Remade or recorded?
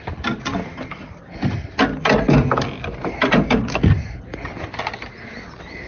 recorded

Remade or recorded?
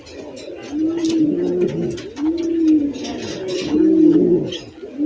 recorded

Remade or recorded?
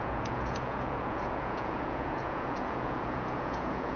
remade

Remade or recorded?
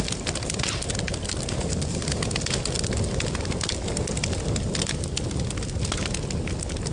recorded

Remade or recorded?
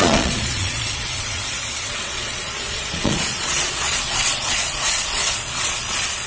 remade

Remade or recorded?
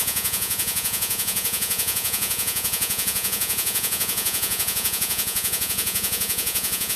remade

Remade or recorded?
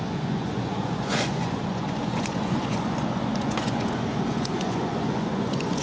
remade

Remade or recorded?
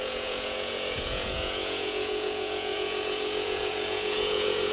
remade